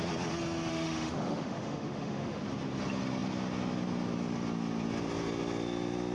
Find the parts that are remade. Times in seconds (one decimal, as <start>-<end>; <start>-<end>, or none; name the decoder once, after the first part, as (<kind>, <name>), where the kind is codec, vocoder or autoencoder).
0.7-2.4 (autoencoder, DAC-VAE)